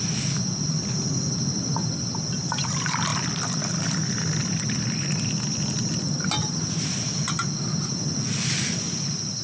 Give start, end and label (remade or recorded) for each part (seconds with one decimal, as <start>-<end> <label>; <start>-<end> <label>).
0.0-9.4 recorded